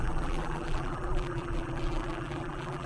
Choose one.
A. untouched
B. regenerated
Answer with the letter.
B